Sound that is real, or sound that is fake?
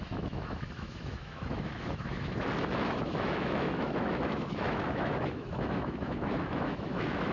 fake